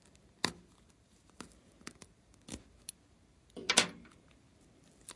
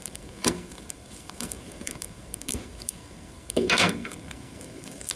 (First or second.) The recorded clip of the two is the first